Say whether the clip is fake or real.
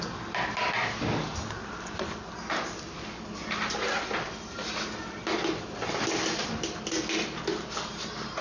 real